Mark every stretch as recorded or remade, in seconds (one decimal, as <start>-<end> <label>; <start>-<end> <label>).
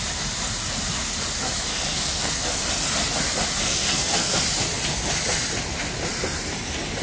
0.0-1.7 recorded; 1.7-2.6 remade; 2.6-3.6 recorded; 3.6-4.3 remade; 4.3-7.0 recorded